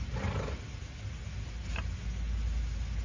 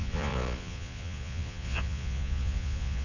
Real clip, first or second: first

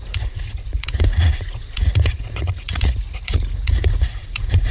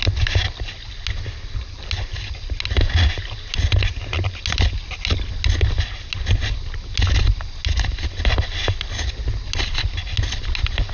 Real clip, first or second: second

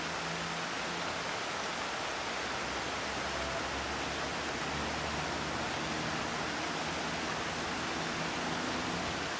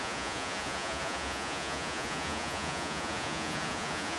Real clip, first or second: first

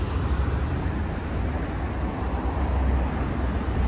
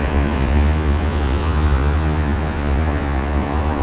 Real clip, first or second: first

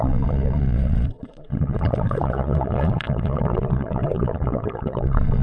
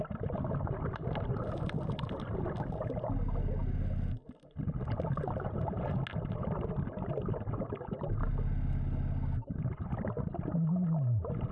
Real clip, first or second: second